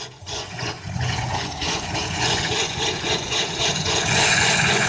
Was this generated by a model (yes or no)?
yes